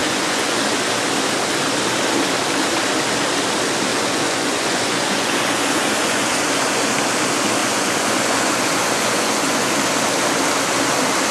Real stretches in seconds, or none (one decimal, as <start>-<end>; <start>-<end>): 0.6-3.9; 6.9-7.6; 9.7-11.3